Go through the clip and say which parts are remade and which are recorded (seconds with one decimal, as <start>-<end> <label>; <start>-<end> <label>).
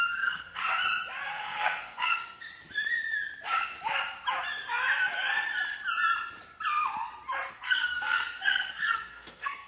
0.0-0.6 remade; 0.6-1.3 recorded; 1.3-2.5 remade; 2.5-7.5 recorded; 7.5-9.7 remade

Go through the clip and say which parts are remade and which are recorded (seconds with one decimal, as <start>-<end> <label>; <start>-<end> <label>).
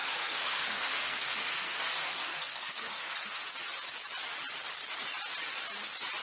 0.0-3.4 remade; 3.4-6.2 recorded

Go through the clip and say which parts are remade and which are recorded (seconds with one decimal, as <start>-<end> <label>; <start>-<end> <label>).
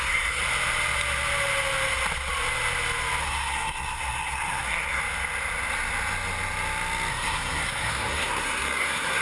0.0-0.4 remade; 0.4-3.2 recorded; 3.2-5.0 remade; 5.0-7.1 recorded; 7.1-9.2 remade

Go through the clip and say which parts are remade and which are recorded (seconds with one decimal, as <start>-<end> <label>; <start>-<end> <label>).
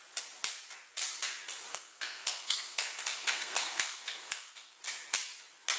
0.0-1.7 recorded; 1.7-4.8 remade; 4.8-5.8 recorded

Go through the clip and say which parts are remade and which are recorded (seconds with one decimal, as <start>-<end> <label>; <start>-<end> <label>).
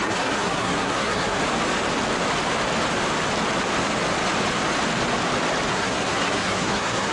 0.0-1.4 remade; 1.4-5.7 recorded; 5.7-7.1 remade